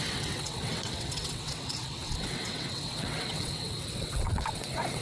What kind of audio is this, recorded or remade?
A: remade